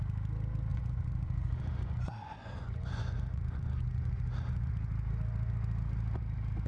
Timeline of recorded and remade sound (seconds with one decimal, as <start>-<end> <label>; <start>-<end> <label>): 0.0-0.7 recorded; 0.7-4.7 remade; 4.7-6.7 recorded